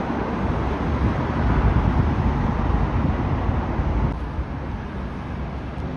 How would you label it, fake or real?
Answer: real